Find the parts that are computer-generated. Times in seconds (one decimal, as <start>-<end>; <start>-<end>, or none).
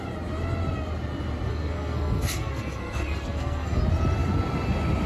1.5-3.8